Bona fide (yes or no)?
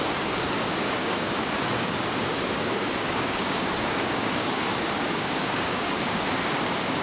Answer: no